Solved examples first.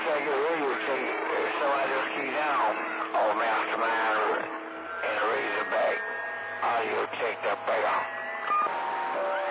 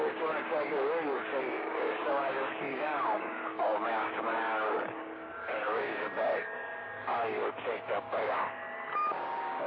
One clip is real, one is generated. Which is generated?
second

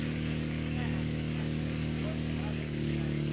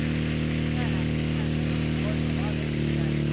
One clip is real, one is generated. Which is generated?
first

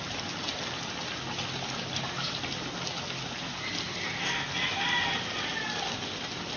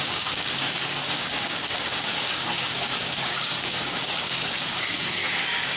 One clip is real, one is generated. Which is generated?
second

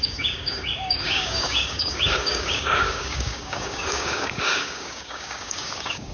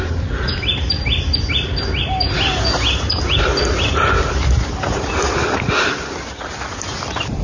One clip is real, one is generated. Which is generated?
first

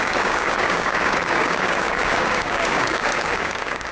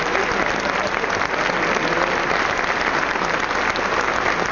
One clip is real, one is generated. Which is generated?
first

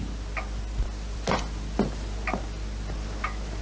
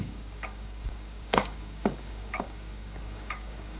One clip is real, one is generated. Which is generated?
second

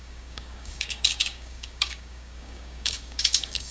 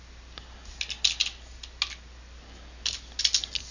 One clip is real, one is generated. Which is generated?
first